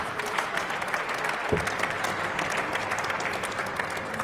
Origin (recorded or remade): recorded